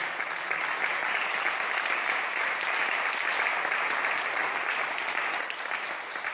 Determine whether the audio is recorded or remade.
recorded